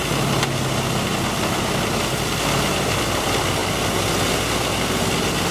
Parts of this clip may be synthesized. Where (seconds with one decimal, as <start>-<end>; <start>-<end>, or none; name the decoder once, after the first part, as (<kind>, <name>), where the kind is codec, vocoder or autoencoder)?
0.9-3.6 (vocoder, BigVGAN v2)